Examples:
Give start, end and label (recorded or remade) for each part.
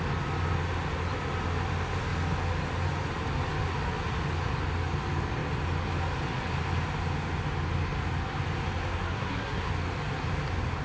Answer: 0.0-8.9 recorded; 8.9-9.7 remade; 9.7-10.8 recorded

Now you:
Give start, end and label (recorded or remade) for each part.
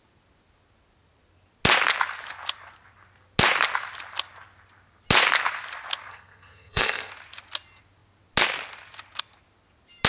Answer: 0.0-6.1 recorded; 6.1-7.1 remade; 7.1-10.1 recorded